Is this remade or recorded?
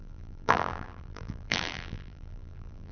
remade